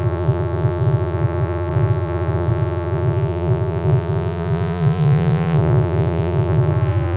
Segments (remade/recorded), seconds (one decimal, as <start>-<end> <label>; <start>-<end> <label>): 0.0-7.2 remade